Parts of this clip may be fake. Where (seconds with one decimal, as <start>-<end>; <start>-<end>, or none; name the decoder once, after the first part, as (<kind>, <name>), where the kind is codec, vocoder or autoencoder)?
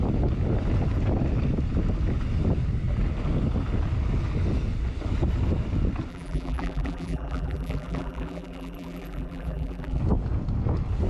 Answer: 6.1-10.0 (vocoder, BigVGAN v2)